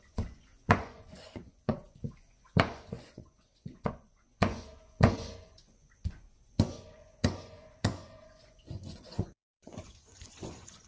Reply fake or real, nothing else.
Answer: fake